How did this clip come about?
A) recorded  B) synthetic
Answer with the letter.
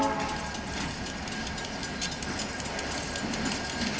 A